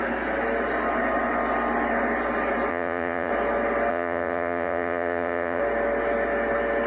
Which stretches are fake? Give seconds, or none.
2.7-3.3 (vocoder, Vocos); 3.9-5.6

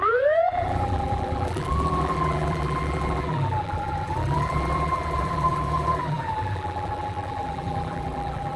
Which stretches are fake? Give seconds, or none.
0.0-8.6 (vocoder, BigVGAN v2)

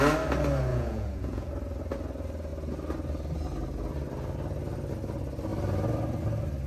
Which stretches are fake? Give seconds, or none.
0.7-1.5 (vocoder, Vocos)

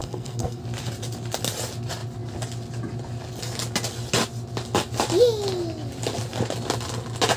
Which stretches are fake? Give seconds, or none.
0.0-0.6 (codec, SNAC)

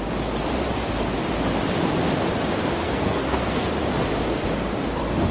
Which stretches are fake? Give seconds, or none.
2.8-3.6 (codec, SNAC)

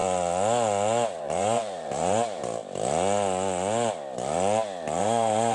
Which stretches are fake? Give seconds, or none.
1.2-2.6 (vocoder, BigVGAN v2); 5.0-5.5

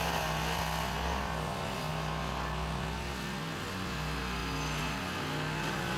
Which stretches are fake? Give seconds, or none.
none